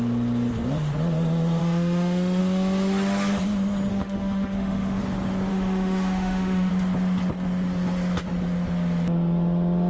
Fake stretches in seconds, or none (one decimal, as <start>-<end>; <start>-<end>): 1.6-2.4; 3.9-5.0; 5.5-6.7